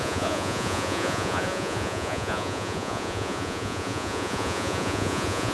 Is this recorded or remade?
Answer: remade